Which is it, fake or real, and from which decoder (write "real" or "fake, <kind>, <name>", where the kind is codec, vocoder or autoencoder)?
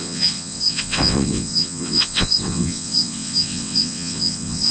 fake, vocoder, WaveNeXt